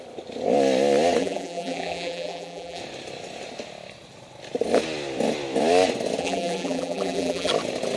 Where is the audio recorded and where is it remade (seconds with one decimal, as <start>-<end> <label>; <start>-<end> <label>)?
0.0-1.2 recorded; 1.2-2.8 remade; 2.8-6.2 recorded; 6.2-7.5 remade; 7.5-8.0 recorded